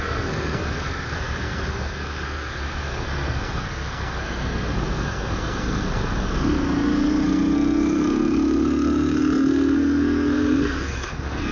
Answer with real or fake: fake